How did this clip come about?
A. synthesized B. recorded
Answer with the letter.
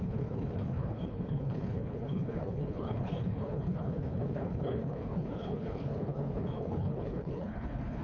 A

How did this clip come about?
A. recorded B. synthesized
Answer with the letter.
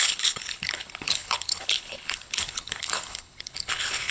B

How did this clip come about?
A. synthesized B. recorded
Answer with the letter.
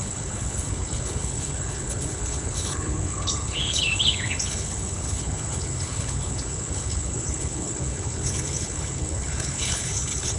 A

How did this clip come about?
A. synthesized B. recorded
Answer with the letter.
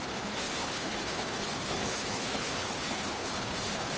A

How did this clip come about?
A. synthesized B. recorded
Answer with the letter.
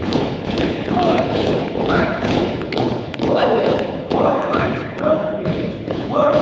A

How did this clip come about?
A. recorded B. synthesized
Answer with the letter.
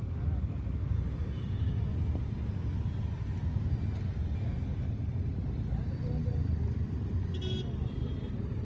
A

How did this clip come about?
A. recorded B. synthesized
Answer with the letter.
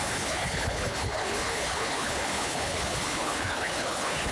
B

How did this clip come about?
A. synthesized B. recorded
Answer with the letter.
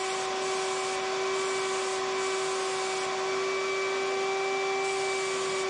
B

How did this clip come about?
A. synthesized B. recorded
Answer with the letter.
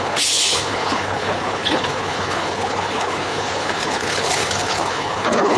A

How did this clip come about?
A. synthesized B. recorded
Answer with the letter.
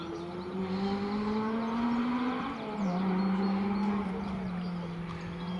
B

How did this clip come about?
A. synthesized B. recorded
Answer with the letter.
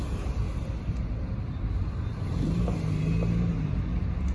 B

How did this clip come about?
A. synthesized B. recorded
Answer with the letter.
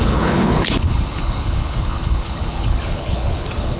A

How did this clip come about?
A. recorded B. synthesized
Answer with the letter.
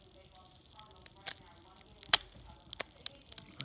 A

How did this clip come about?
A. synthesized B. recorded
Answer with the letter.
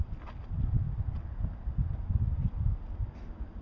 B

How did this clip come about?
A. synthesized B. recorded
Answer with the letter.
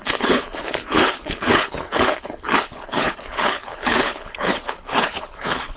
A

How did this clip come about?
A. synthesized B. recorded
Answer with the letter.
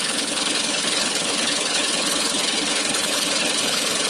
A